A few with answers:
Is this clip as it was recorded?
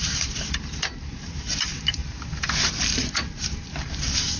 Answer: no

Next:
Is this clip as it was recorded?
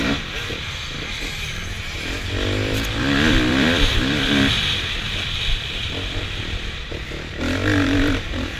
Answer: no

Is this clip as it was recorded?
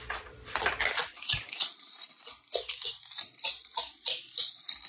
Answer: no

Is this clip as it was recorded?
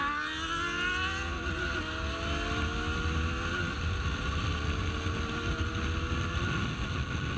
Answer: yes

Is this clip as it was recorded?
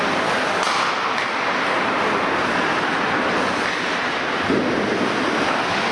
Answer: yes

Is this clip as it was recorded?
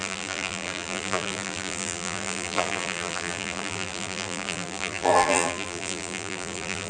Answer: no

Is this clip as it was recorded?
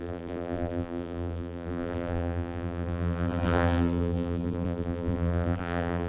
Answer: no